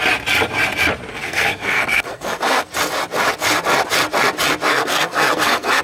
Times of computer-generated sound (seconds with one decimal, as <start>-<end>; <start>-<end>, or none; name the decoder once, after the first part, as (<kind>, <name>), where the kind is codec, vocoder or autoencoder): 1.1-2.7 (codec, SNAC); 4.7-5.8